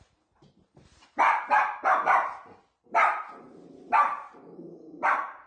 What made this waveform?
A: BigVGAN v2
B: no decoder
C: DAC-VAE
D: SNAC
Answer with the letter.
A